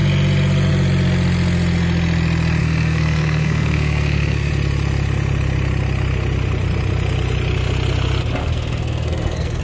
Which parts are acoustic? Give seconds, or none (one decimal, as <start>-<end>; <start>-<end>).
0.0-2.6; 4.5-8.4